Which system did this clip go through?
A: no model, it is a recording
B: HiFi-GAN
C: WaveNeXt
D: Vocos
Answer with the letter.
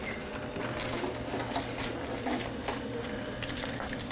A